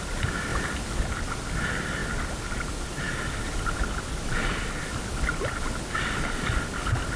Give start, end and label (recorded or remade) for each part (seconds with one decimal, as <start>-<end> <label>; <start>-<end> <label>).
0.0-7.2 recorded